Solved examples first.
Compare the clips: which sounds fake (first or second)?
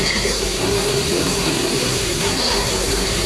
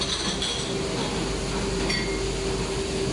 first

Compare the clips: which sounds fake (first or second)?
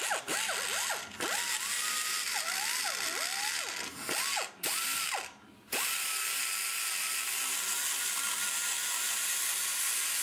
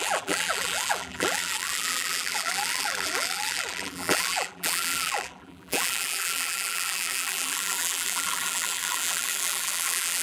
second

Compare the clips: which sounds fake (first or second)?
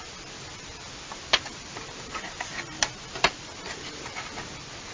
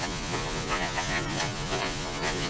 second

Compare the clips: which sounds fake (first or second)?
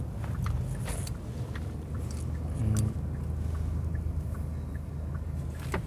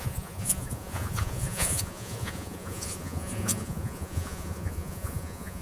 second